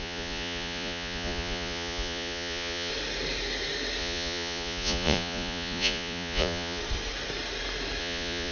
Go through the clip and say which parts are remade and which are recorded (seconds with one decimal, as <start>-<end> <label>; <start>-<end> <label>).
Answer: 0.0-2.9 remade; 2.9-4.0 recorded; 4.0-6.8 remade; 6.8-8.0 recorded; 8.0-8.5 remade